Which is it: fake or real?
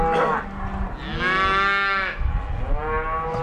real